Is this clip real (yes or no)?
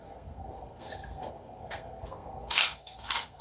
no